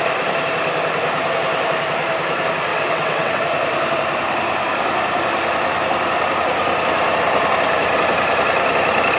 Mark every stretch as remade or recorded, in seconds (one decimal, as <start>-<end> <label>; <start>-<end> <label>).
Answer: 0.0-2.7 recorded; 2.7-3.4 remade; 3.4-9.2 recorded